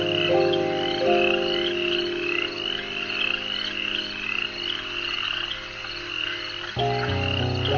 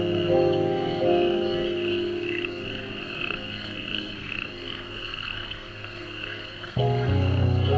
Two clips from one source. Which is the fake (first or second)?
second